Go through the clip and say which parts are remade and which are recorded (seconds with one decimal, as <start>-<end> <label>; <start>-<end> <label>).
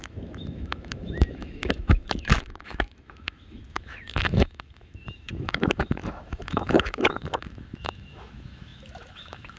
0.0-9.6 remade